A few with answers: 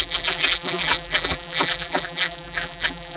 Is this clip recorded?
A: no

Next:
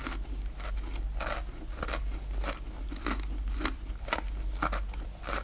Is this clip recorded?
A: yes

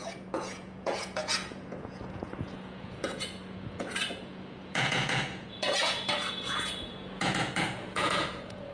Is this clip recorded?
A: no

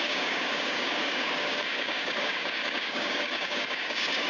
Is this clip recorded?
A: no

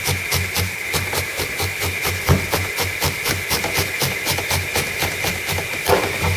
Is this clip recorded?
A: yes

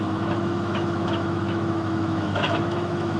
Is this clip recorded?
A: no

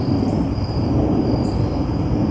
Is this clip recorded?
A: yes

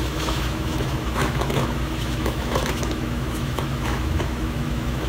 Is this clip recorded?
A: no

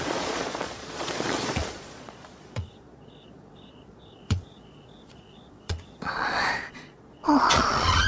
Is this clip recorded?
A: no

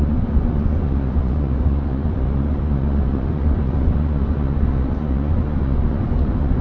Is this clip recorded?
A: no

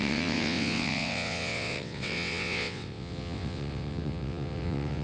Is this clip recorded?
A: no